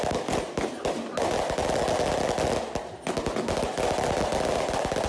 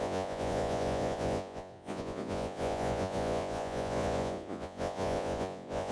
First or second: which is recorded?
first